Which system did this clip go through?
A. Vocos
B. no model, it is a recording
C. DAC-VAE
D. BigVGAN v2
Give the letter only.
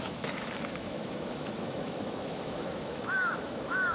C